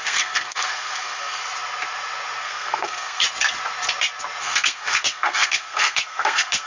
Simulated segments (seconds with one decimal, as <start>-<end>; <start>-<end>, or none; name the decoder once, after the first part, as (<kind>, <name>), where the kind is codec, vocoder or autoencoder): 0.0-1.4 (codec, SNAC); 2.4-3.2; 4.4-6.7